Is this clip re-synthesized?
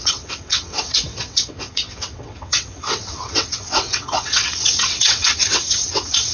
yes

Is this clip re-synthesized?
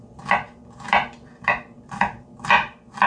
no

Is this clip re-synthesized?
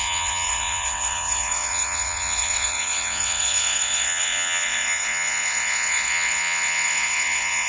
yes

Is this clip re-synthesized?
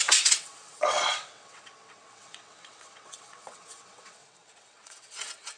yes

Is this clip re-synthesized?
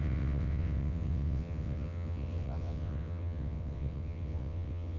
yes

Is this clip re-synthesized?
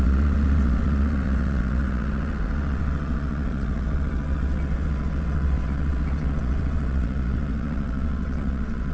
yes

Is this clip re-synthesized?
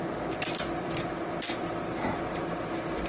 no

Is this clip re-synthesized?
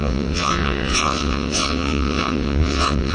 yes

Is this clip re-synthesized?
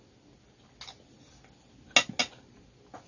no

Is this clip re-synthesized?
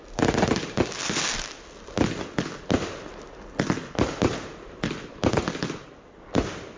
no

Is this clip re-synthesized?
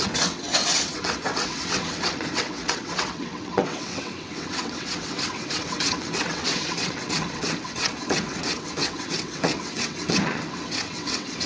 yes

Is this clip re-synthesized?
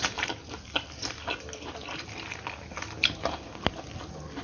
no